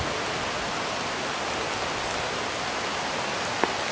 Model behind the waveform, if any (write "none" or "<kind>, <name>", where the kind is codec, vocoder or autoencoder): none